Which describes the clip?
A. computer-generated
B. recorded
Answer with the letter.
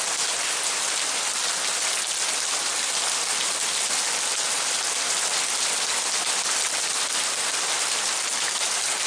B